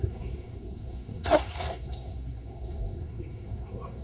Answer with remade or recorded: remade